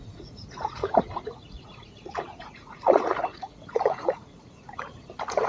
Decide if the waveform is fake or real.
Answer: fake